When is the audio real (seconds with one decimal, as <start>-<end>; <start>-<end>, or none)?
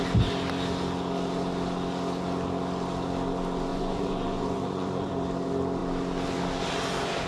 0.0-3.7; 5.1-7.3